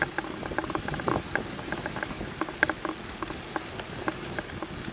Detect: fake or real real